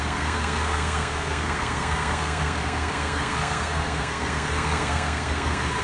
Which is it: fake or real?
fake